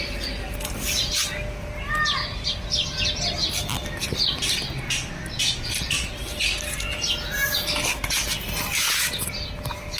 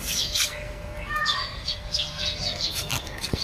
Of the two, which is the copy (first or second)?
second